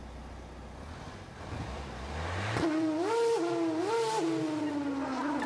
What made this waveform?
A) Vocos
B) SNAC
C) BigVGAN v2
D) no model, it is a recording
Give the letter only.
D